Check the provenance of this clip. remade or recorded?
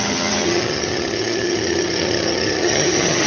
remade